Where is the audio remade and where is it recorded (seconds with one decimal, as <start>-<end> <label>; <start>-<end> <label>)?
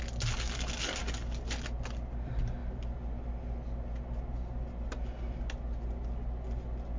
0.0-7.0 recorded